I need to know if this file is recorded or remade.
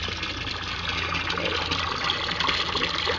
recorded